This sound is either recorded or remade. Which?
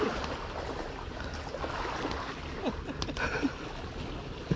recorded